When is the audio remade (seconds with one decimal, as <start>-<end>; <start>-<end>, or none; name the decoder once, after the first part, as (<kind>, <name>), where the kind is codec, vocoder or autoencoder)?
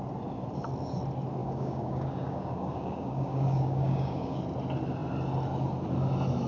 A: 1.4-4.4 (codec, DAC)